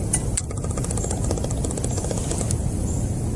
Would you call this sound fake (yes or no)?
no